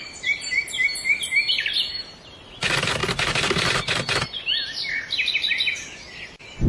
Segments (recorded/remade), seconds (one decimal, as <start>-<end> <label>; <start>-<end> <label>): 0.0-6.7 recorded